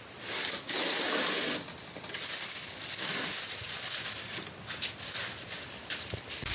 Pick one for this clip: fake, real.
real